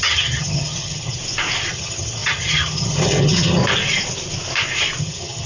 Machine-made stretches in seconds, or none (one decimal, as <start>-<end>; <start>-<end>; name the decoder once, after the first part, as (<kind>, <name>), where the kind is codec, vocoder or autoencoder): 0.0-1.2 (vocoder, HiFi-GAN); 1.7-3.6; 5.0-5.5